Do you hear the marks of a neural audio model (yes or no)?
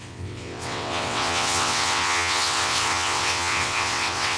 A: yes